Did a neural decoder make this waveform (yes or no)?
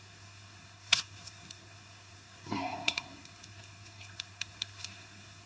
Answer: yes